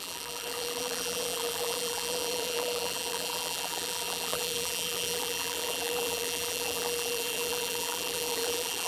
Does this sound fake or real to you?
fake